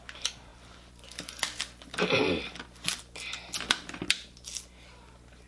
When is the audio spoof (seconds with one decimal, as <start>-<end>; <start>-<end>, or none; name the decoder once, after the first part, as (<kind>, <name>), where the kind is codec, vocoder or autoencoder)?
none